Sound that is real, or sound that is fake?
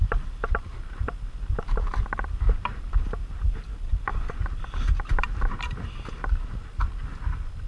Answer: real